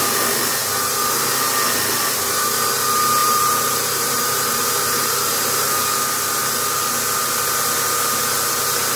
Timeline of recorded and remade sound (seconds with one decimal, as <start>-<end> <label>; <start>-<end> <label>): 0.0-3.2 recorded; 3.2-5.8 remade; 5.8-9.0 recorded